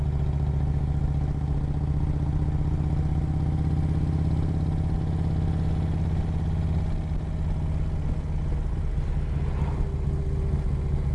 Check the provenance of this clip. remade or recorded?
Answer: recorded